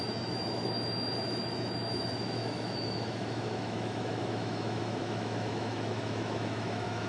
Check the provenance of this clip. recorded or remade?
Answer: remade